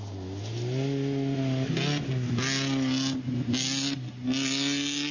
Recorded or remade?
recorded